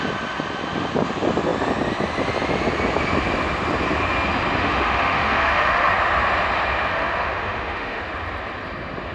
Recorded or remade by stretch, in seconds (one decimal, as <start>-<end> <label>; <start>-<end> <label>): 0.0-4.6 recorded; 4.6-5.9 remade; 5.9-6.9 recorded; 6.9-8.0 remade; 8.0-9.1 recorded